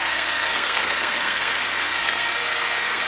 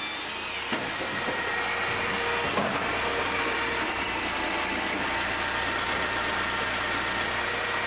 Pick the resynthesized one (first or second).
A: first